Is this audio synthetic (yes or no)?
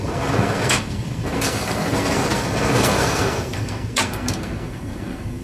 yes